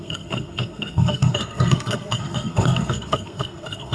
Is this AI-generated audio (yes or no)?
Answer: yes